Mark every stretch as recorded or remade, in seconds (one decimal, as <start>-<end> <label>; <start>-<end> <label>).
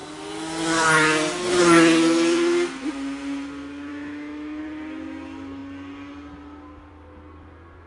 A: 0.0-3.9 recorded; 3.9-4.6 remade; 4.6-7.9 recorded